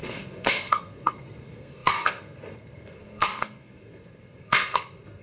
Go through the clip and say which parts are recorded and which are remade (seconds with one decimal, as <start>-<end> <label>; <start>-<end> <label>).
0.0-5.2 remade